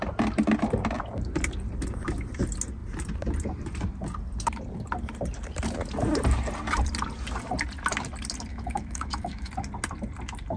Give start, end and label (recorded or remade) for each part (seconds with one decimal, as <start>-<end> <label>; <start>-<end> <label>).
0.0-8.5 recorded; 8.5-9.5 remade; 9.5-10.6 recorded